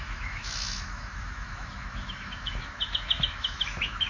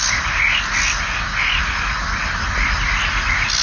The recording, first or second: second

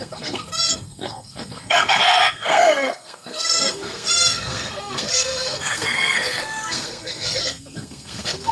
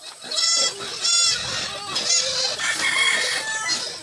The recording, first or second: second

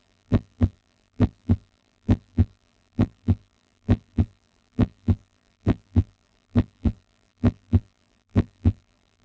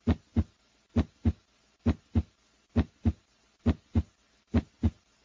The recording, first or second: second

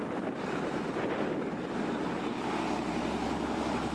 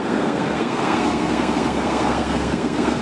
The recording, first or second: first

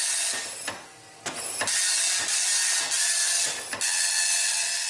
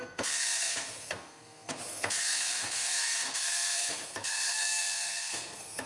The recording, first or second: first